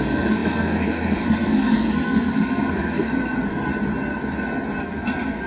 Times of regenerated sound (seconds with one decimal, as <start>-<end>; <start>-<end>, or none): 0.0-3.7; 4.8-5.5